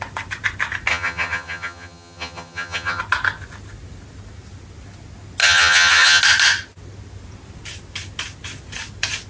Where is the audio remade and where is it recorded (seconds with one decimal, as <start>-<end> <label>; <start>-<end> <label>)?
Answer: 0.0-0.9 recorded; 0.9-3.0 remade; 3.0-5.4 recorded; 5.4-6.2 remade; 6.2-9.3 recorded

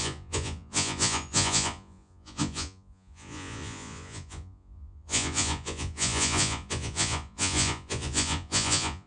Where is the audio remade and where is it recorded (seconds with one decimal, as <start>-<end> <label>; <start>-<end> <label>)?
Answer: 0.0-9.1 remade

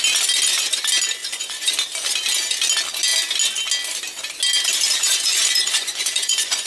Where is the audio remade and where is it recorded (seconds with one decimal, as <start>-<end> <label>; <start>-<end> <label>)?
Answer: 0.0-1.2 recorded; 1.2-1.7 remade; 1.7-5.0 recorded; 5.0-6.7 remade

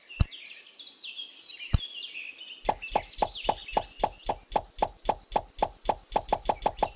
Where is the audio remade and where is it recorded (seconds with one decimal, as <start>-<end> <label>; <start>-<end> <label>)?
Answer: 0.0-7.0 recorded

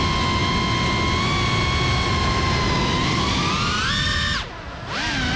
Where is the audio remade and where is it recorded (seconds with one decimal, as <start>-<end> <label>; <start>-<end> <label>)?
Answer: 0.0-5.4 recorded